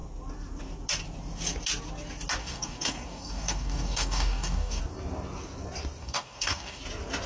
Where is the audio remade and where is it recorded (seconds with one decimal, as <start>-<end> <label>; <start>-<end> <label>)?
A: 0.0-2.4 recorded; 2.4-4.8 remade; 4.8-6.0 recorded; 6.0-6.8 remade; 6.8-7.3 recorded